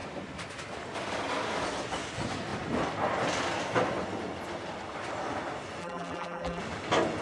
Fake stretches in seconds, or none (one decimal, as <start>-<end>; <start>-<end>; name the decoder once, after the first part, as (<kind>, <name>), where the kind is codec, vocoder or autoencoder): 5.8-6.6 (vocoder, BigVGAN v2)